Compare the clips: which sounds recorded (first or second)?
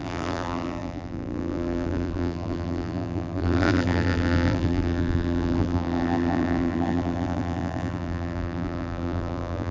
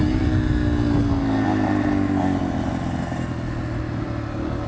second